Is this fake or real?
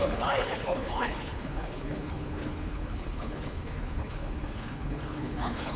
fake